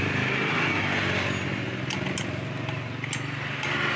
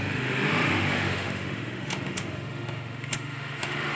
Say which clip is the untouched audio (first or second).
first